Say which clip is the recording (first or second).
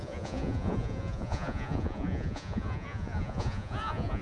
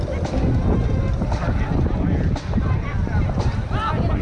second